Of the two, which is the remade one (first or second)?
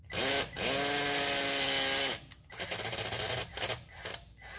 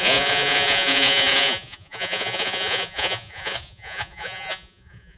second